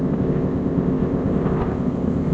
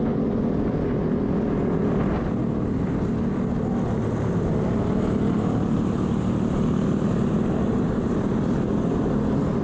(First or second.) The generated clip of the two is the first